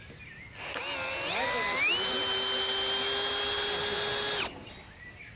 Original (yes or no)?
yes